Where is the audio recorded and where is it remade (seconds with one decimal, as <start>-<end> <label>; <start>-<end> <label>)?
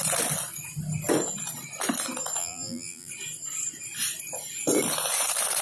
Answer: 0.0-2.4 recorded; 2.4-3.1 remade; 3.1-5.6 recorded